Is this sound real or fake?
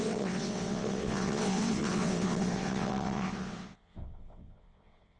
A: fake